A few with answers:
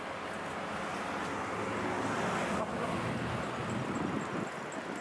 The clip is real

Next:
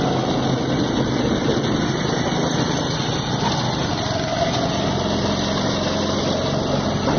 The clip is real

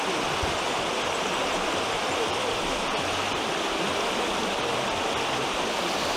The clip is real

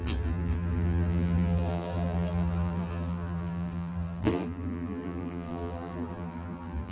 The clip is fake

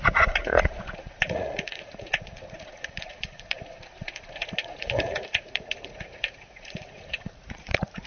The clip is fake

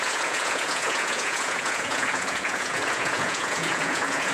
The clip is fake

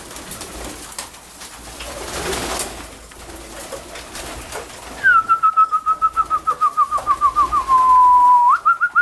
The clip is real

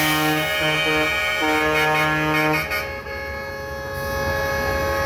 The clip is real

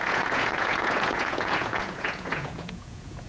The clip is fake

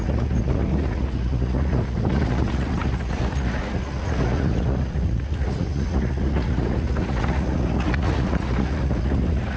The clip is fake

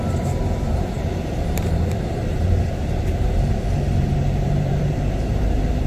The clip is fake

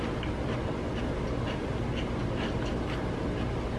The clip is real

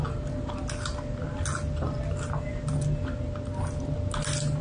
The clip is real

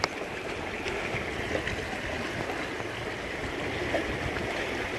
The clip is real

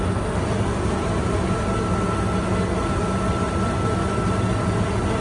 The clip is real